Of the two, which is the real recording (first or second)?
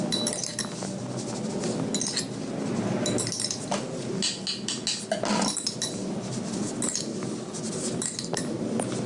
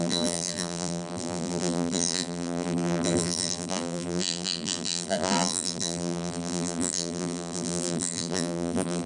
first